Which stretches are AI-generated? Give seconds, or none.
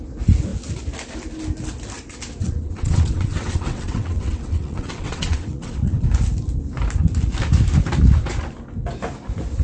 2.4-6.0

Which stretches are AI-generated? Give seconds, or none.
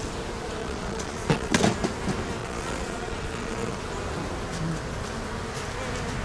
0.6-1.6; 2.4-3.8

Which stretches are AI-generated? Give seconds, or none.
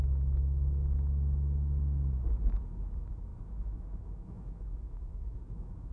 3.3-5.9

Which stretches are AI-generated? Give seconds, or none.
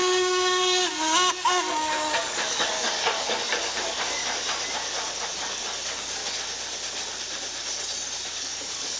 0.0-4.2; 5.3-6.2; 8.4-9.0